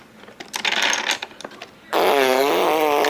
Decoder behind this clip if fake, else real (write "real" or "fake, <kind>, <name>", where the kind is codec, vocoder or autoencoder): real